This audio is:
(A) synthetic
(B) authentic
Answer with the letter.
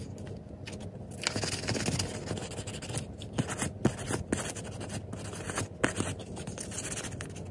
B